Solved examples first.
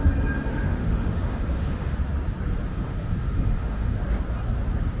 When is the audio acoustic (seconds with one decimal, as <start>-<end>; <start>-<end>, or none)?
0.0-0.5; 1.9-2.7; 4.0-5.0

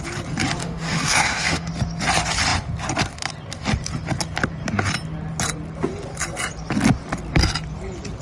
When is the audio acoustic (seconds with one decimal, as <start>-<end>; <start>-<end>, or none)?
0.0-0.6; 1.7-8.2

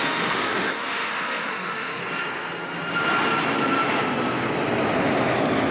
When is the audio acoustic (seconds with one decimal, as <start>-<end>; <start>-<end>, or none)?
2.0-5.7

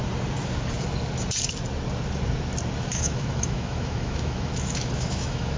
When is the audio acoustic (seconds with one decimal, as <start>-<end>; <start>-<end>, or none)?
0.0-2.9

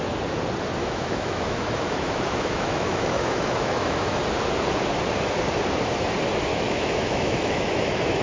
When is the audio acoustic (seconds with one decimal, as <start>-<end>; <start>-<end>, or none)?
0.0-0.8; 4.2-6.5

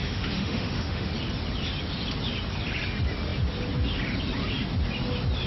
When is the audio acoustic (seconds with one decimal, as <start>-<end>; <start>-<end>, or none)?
1.1-5.5